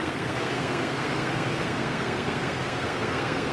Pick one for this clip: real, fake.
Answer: fake